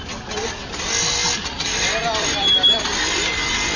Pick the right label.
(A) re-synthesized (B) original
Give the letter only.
B